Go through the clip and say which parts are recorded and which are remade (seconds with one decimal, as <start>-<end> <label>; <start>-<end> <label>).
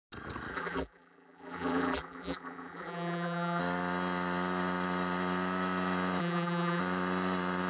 0.0-0.5 recorded; 0.5-3.6 remade; 3.6-6.2 recorded; 6.2-6.8 remade; 6.8-7.7 recorded